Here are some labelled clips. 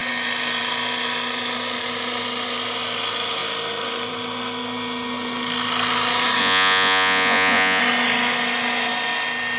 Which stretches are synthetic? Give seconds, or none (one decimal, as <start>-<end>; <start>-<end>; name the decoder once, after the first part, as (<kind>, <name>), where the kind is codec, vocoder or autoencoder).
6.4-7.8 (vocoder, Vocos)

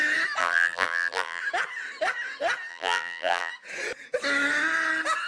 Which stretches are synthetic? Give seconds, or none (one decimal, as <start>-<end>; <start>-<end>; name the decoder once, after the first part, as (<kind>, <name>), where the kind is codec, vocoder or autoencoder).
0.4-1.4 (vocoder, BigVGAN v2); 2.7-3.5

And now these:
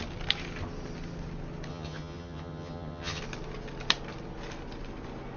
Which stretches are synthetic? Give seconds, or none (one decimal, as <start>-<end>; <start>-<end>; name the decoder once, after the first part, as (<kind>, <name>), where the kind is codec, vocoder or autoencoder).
1.7-3.2 (vocoder, HiFi-GAN)

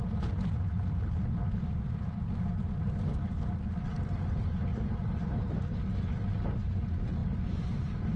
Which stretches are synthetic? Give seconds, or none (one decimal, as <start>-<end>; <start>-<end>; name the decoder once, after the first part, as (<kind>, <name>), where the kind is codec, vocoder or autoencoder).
3.2-4.2 (vocoder, BigVGAN v2); 7.2-8.2

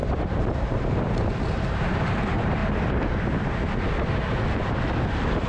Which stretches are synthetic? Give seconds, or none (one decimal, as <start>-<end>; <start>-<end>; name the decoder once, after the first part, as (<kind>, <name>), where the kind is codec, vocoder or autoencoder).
0.0-2.6 (vocoder, BigVGAN v2)

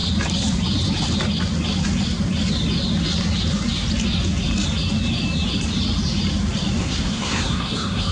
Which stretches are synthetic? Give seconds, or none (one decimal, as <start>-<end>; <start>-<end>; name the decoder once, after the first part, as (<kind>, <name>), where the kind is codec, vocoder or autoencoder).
6.8-8.1 (codec, SNAC)

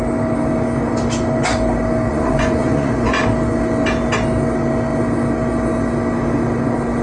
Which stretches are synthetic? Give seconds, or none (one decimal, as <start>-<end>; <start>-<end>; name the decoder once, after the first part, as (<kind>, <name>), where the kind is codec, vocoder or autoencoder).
2.1-3.2 (vocoder, Vocos)

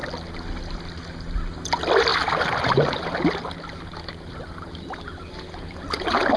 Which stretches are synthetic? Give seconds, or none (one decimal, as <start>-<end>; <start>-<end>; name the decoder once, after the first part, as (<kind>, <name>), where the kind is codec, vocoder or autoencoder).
none